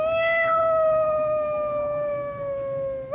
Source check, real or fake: real